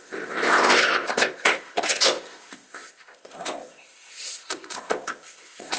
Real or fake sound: fake